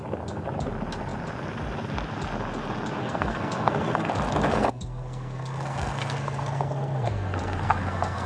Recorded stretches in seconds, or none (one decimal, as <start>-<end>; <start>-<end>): 0.0-3.0; 4.1-4.5